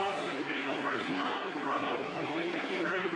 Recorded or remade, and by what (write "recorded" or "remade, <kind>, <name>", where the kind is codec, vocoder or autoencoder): remade, codec, SNAC